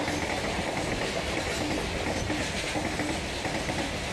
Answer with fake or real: real